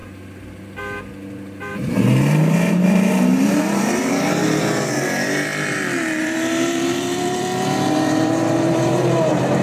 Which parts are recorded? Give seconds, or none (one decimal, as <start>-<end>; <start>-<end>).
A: 0.0-1.7; 5.5-6.2